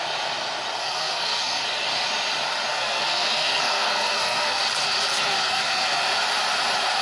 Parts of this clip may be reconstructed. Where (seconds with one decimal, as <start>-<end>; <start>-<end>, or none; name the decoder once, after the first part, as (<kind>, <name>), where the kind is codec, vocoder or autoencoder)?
0.8-1.6 (codec, SNAC); 2.7-4.6; 5.1-6.0

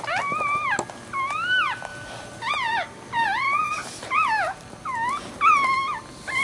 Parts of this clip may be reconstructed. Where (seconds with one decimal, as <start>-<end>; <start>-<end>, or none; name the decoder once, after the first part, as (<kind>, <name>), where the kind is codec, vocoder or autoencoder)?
none

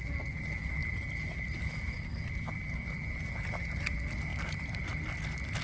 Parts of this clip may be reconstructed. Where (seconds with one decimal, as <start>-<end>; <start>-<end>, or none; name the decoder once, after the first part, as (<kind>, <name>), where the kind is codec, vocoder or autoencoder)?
0.8-2.3 (vocoder, BigVGAN v2); 4.3-5.0